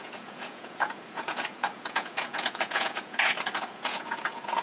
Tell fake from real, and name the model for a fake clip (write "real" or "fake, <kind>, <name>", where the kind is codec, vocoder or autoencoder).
fake, vocoder, Vocos